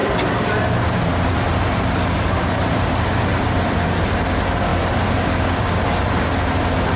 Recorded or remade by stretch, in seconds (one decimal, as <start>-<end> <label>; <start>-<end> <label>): 0.0-4.2 remade; 4.2-7.0 recorded